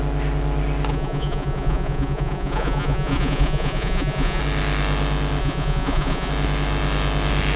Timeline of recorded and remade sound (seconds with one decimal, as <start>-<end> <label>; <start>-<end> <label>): 0.0-0.9 recorded; 0.9-4.4 remade; 4.4-5.4 recorded; 5.4-6.3 remade; 6.3-7.6 recorded